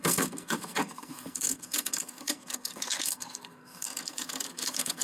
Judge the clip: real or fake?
fake